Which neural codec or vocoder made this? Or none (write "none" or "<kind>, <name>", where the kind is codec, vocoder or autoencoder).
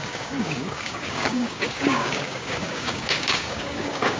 codec, DAC